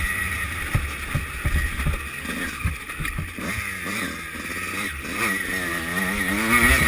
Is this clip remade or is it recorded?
recorded